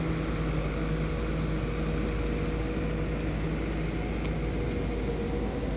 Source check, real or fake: real